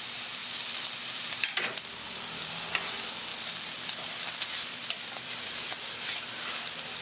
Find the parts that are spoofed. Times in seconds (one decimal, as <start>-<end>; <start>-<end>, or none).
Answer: 0.4-2.5; 3.3-6.3